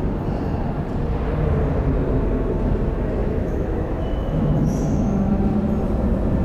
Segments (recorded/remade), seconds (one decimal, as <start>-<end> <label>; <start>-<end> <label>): 0.0-3.2 recorded; 3.2-5.3 remade; 5.3-6.4 recorded